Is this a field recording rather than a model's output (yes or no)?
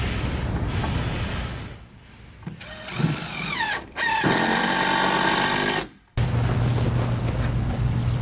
yes